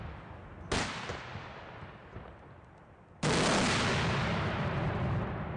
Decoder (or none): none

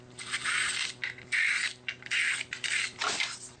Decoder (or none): none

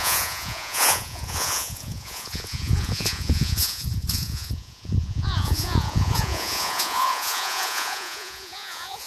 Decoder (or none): vocoder, Vocos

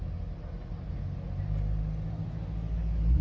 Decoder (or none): none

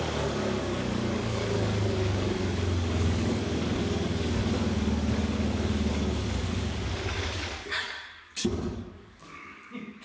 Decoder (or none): codec, DAC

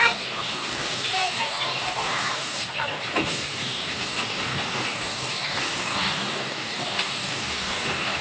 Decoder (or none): codec, DAC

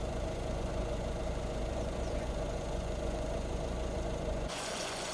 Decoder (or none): vocoder, Vocos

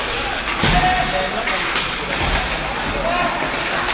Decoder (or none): none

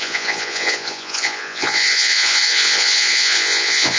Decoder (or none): vocoder, Vocos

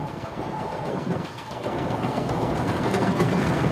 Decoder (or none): codec, SNAC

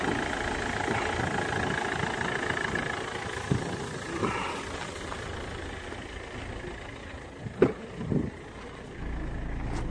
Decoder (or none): none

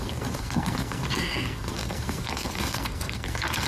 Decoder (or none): codec, SNAC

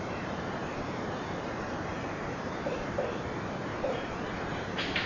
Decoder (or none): vocoder, BigVGAN v2